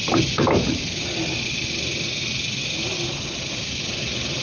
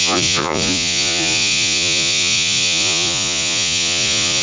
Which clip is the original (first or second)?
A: first